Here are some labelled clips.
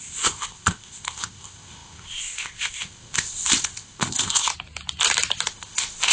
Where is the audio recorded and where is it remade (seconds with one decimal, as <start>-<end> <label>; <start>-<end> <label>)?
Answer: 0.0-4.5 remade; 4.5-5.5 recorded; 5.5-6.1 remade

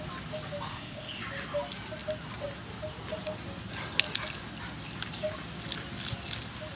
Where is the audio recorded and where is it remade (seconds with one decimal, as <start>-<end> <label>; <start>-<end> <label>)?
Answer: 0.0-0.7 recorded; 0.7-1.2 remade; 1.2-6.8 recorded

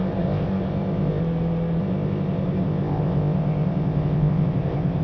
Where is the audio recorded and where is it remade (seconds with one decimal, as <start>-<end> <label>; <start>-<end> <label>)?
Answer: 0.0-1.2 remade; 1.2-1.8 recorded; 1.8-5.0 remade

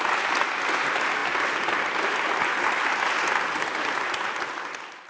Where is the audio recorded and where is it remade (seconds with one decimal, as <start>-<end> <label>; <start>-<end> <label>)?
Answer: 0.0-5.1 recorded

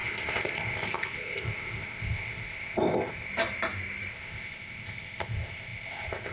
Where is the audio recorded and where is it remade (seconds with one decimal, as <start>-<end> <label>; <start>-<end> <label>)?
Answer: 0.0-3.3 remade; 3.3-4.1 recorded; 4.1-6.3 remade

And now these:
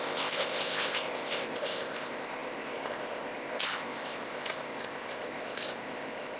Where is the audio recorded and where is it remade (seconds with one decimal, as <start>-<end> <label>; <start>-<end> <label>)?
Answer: 0.0-6.4 remade